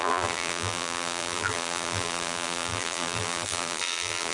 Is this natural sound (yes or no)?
no